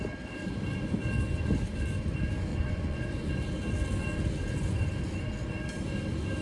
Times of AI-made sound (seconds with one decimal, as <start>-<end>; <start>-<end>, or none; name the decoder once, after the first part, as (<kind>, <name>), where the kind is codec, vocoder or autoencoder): 2.5-3.3 (vocoder, Vocos)